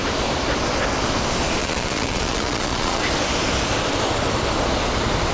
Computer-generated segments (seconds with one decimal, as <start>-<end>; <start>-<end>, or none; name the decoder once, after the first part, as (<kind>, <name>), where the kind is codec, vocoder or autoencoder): 1.6-3.0 (vocoder, Vocos)